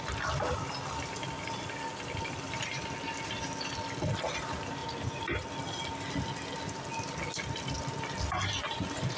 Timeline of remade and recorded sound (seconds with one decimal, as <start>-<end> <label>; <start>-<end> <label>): 0.0-9.2 recorded